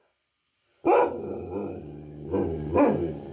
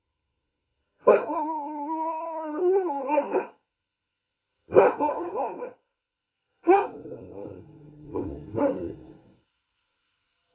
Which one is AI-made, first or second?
second